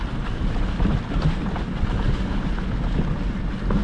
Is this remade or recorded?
recorded